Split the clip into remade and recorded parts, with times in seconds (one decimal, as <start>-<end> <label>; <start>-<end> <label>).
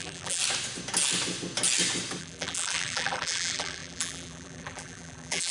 0.0-0.4 remade; 0.4-2.2 recorded; 2.2-5.5 remade